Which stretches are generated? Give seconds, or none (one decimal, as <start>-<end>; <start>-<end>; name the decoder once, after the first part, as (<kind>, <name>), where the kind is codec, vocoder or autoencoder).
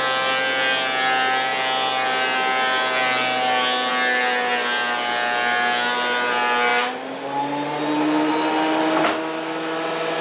none